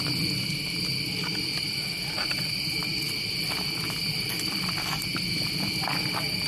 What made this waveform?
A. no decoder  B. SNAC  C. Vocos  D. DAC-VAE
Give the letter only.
A